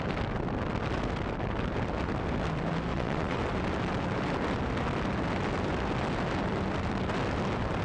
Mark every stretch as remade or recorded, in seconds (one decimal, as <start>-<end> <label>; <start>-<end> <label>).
0.0-2.9 recorded; 2.9-3.4 remade; 3.4-7.8 recorded